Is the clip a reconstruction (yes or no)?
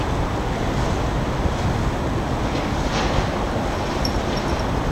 no